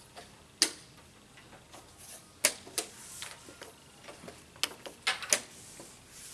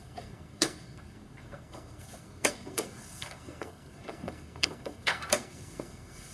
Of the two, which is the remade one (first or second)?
second